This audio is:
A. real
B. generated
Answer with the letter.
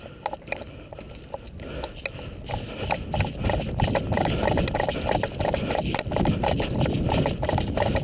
A